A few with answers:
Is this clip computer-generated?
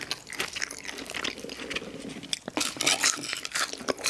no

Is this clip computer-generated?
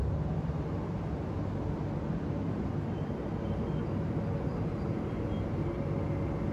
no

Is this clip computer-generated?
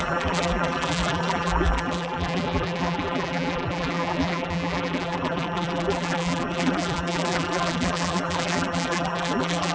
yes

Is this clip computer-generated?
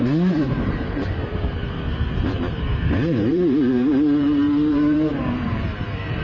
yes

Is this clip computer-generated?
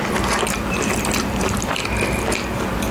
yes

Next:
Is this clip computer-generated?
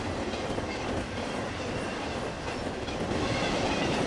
yes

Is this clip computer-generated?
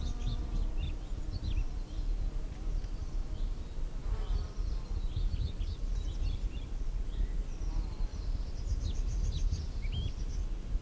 no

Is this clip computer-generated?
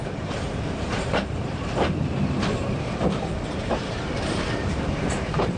yes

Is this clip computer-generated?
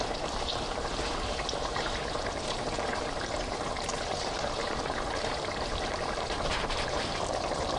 yes